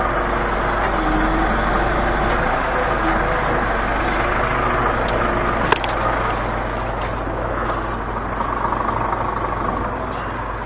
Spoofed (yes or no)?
no